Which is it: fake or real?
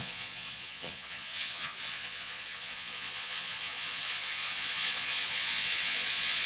fake